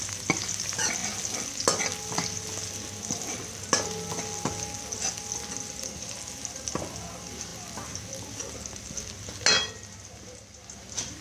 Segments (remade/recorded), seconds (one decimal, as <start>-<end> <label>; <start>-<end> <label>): 0.0-11.2 recorded